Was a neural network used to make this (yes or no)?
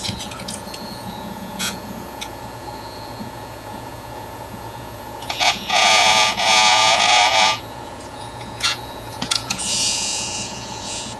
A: yes